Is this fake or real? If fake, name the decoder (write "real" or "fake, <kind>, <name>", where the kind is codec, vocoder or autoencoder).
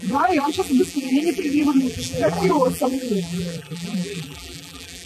fake, vocoder, BigVGAN v2